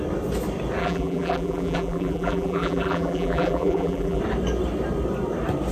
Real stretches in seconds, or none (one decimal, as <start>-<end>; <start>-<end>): 0.0-0.8; 4.2-5.7